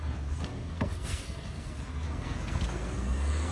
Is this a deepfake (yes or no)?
yes